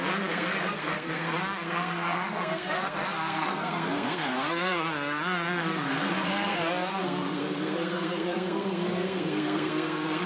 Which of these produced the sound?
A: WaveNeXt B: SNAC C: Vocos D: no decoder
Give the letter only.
B